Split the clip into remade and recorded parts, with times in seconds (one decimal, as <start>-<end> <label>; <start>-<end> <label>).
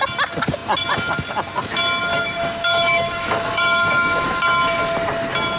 0.0-2.1 recorded; 2.1-4.4 remade; 4.4-5.6 recorded